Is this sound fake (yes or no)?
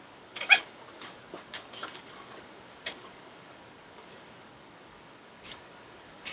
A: yes